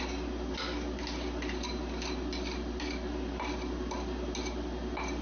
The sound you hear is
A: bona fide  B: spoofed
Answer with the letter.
A